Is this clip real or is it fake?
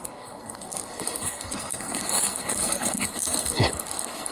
fake